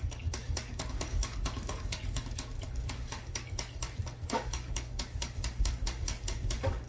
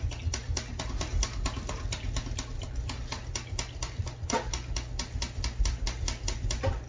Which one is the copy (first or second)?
first